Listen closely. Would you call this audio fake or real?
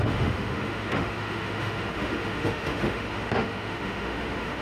fake